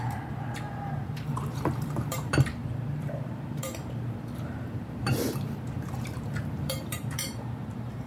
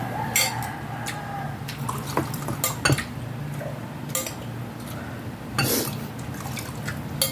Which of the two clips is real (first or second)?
second